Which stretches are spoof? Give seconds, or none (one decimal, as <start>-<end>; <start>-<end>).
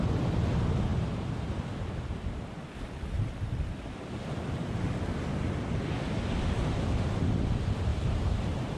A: 7.9-8.8